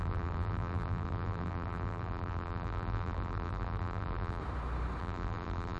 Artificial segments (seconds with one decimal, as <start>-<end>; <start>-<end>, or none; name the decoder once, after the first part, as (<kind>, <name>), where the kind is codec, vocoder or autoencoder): 0.0-4.4 (vocoder, BigVGAN v2); 5.0-5.8